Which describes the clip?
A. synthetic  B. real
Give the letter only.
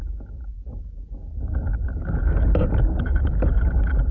B